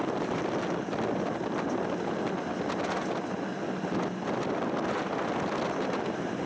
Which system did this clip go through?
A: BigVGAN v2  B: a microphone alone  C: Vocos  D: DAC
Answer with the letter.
B